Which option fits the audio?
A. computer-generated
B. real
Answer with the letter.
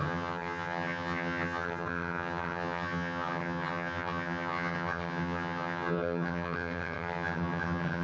A